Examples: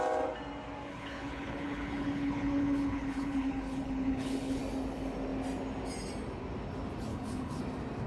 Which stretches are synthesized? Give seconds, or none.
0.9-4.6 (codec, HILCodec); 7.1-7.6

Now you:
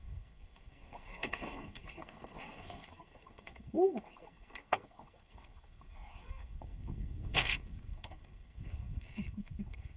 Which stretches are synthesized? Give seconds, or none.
0.0-10.0 (codec, SNAC)

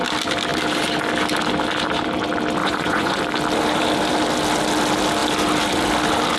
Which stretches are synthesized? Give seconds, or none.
2.6-3.2 (vocoder, Vocos)